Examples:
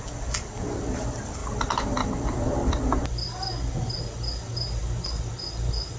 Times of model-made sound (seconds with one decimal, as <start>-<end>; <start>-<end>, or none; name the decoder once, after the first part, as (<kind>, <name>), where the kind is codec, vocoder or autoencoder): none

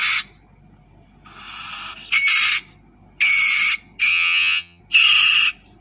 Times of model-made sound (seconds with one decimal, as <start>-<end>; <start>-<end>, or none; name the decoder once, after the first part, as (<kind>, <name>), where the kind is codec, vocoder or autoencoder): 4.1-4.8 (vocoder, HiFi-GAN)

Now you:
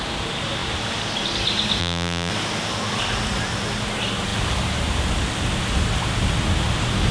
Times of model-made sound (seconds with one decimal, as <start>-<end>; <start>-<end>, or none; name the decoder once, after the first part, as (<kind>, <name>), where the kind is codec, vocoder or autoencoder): 1.8-2.3 (vocoder, BigVGAN v2)